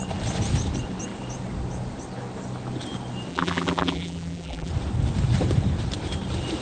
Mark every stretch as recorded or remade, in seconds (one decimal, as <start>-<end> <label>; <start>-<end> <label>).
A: 0.0-3.3 recorded; 3.3-4.7 remade; 4.7-6.6 recorded